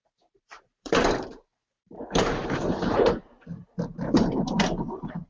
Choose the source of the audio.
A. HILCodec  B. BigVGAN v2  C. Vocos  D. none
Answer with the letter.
B